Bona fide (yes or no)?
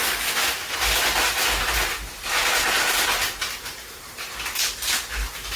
yes